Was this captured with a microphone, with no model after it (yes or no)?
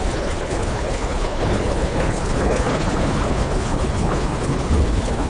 no